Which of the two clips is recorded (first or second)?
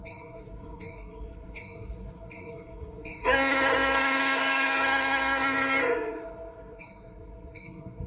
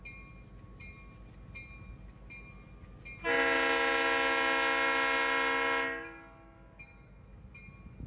second